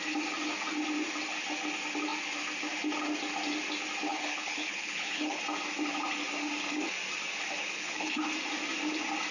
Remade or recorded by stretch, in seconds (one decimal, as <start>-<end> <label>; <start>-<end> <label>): 0.0-4.1 recorded; 4.1-5.4 remade; 5.4-7.6 recorded; 7.6-8.2 remade; 8.2-9.3 recorded